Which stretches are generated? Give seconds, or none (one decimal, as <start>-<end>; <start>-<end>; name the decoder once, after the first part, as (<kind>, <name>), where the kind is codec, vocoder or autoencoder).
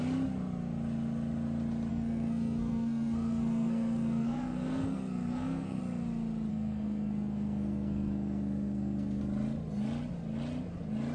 1.9-5.8 (codec, SNAC); 6.5-9.2